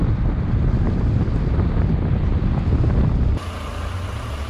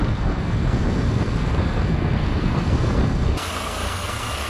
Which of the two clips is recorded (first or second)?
first